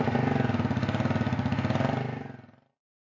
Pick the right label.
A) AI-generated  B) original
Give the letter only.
B